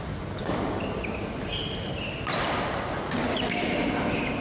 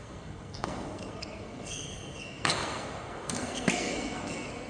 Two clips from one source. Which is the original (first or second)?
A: first